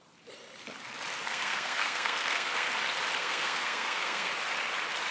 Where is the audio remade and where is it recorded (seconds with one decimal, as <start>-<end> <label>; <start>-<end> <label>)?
0.0-1.3 recorded; 1.3-2.7 remade; 2.7-3.2 recorded; 3.2-4.3 remade; 4.3-5.1 recorded